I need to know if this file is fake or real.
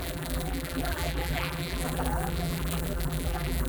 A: fake